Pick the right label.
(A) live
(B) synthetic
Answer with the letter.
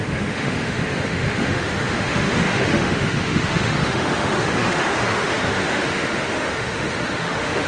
B